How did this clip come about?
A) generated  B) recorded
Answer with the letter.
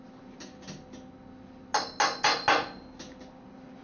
B